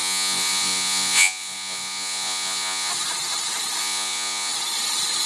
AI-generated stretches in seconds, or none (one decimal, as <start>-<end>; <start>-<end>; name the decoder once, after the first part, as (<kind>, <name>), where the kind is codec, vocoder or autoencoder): 0.0-2.9 (vocoder, Vocos); 3.8-4.5